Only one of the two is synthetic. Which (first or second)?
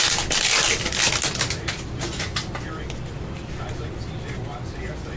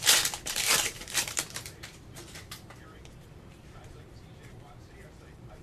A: second